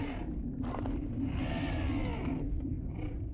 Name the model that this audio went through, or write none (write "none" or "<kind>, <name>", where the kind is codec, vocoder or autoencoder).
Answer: none